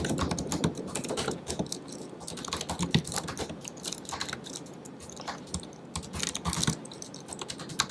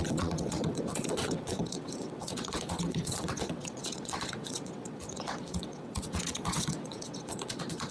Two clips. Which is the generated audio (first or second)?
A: second